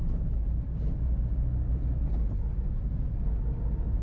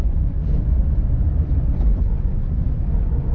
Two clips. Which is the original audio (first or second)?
first